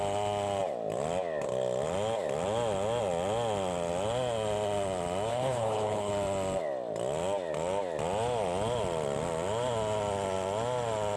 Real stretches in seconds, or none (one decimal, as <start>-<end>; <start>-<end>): 0.0-5.3; 6.1-11.2